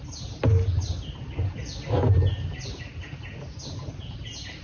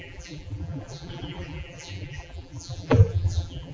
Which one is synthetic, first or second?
second